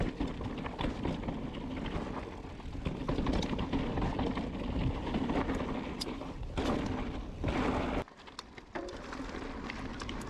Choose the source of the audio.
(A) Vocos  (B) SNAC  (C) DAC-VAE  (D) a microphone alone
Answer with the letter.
D